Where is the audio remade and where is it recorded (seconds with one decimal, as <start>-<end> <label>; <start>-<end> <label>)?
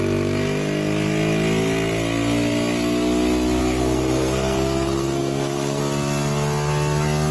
0.0-3.6 recorded; 3.6-5.8 remade; 5.8-7.3 recorded